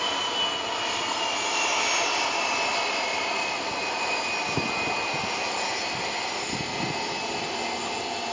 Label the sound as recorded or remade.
recorded